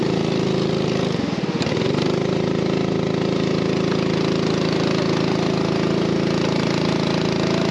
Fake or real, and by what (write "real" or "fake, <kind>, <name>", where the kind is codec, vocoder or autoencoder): real